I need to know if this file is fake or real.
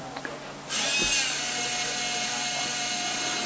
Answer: real